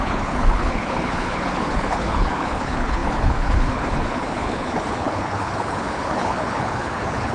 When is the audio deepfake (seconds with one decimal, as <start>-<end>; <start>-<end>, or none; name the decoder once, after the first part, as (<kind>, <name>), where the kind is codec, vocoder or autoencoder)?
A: 0.0-7.3 (codec, HILCodec)